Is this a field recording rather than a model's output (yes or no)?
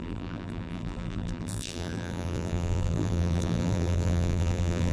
no